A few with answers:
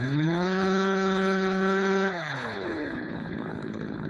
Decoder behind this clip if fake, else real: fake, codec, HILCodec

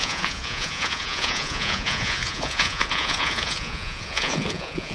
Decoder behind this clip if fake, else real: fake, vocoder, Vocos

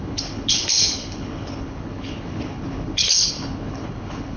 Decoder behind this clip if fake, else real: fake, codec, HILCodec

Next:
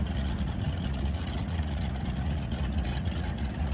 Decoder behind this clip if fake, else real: fake, vocoder, Vocos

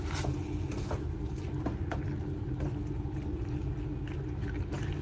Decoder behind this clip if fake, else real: real